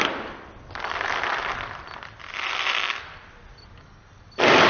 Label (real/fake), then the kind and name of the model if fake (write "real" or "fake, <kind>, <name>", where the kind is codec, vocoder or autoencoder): real